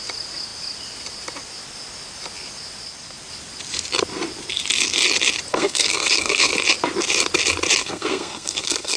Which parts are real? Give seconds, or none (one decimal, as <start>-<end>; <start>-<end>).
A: 0.0-5.5; 6.5-7.8